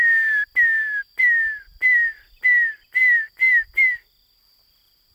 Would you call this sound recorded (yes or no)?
yes